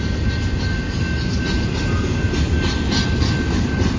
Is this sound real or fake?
real